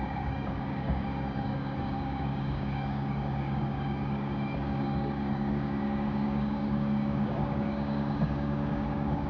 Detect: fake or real fake